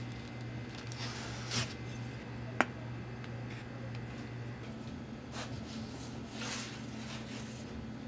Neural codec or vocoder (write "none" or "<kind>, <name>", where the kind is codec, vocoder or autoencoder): none